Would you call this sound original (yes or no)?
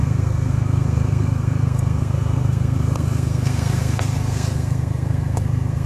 no